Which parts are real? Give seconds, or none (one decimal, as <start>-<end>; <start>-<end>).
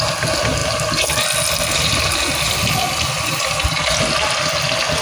0.0-5.0